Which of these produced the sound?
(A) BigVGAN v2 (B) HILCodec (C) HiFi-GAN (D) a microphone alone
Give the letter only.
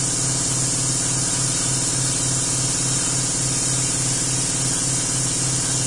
D